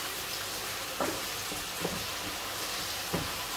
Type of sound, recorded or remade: recorded